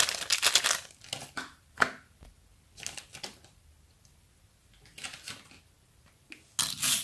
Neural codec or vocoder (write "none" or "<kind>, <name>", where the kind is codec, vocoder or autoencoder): none